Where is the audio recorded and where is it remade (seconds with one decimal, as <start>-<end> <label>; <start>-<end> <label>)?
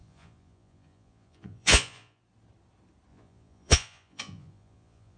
0.0-2.2 remade; 2.2-3.1 recorded; 3.1-5.2 remade